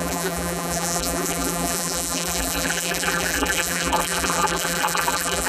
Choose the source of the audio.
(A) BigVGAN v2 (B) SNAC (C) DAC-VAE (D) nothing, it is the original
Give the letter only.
A